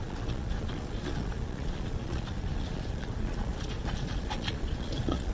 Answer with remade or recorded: remade